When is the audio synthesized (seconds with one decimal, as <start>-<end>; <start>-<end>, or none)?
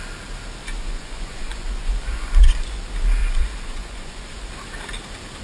0.6-2.8; 3.2-4.5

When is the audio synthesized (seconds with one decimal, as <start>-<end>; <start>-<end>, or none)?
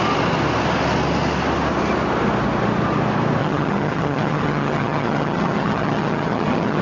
3.4-6.8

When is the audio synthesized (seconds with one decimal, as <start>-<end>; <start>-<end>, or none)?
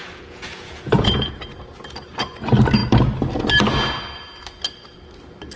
0.0-1.3